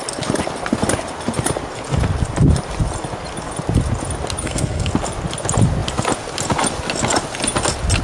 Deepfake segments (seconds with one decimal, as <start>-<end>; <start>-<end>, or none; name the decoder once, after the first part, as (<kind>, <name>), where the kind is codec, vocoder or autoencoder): 4.4-4.9 (codec, SNAC)